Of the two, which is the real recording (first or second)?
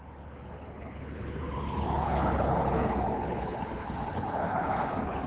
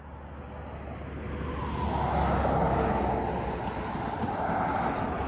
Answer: second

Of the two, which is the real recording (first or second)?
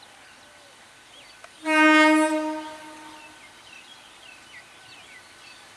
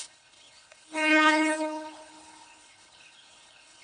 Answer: first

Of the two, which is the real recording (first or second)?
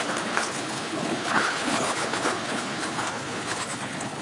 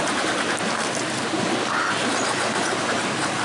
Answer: second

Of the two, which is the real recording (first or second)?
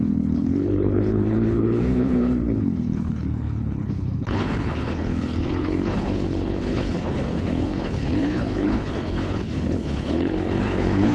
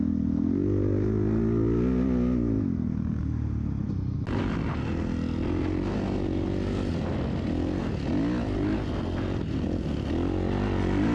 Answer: second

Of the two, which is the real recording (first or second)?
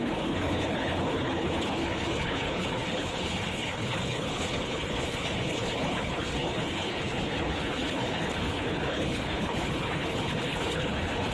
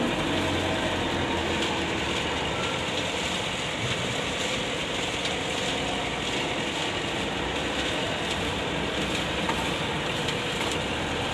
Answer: second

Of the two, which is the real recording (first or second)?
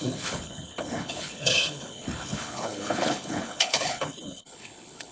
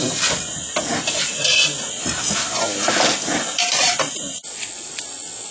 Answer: second